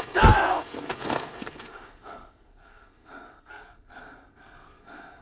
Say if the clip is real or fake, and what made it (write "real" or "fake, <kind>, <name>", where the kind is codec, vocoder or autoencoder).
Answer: fake, codec, SNAC